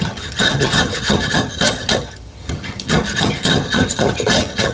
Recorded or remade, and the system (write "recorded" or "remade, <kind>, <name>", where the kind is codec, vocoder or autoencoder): remade, vocoder, HiFi-GAN